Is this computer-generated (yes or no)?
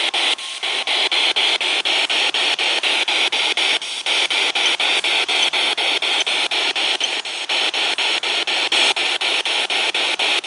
no